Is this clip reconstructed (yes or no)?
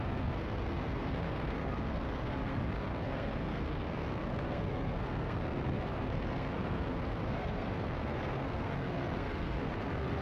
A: yes